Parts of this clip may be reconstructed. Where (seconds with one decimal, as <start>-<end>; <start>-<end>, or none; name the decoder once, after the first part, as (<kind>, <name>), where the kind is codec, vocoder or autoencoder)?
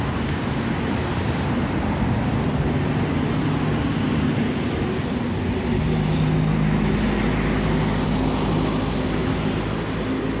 none